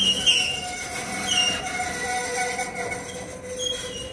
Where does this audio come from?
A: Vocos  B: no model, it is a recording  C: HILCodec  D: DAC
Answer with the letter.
B